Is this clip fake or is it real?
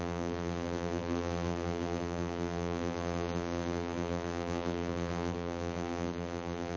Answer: fake